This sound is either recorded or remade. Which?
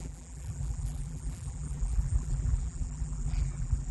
remade